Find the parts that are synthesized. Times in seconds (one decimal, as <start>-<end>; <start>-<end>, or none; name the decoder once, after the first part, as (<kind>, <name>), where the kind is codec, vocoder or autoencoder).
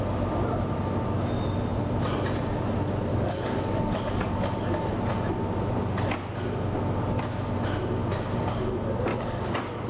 3.1-4.9 (codec, DAC); 9.1-9.9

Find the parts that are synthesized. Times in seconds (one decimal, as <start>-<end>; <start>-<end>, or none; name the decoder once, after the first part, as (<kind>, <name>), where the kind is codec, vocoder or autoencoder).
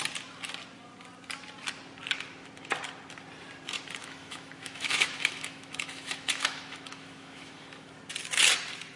4.0-8.0 (autoencoder, DAC-VAE)